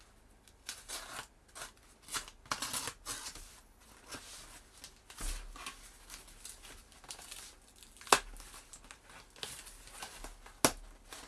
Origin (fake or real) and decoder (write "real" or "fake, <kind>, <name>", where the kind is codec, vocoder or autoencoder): real